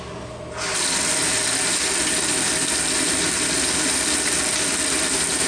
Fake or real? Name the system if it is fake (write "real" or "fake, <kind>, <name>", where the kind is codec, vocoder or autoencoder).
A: real